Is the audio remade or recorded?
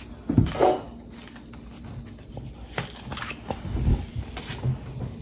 recorded